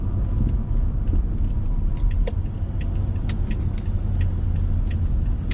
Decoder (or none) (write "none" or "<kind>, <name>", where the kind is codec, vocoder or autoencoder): none